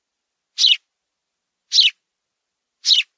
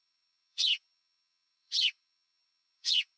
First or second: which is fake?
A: second